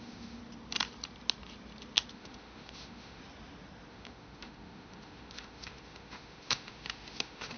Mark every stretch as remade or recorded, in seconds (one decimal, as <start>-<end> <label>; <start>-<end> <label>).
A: 0.0-0.4 remade; 0.4-2.1 recorded; 2.1-3.2 remade; 3.2-3.9 recorded; 3.9-7.6 remade